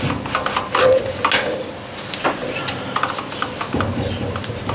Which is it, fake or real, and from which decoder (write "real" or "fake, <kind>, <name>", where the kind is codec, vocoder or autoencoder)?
real